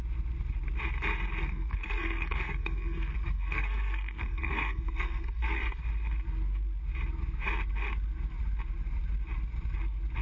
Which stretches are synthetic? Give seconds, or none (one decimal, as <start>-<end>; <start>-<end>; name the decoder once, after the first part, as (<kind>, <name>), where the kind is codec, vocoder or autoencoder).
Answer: 1.4-5.8 (codec, SNAC)